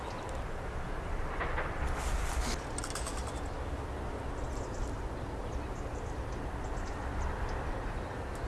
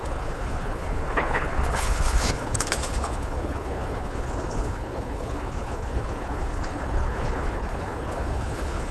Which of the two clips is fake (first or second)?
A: second